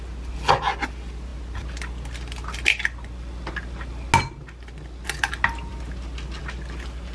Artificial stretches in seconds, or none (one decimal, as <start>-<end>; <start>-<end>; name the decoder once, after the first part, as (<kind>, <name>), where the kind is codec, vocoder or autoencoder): none